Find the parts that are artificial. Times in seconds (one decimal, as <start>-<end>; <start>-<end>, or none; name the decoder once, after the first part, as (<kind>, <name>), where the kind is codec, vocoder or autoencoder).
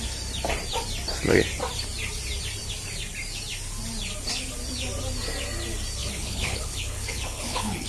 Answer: 6.0-7.9 (codec, HILCodec)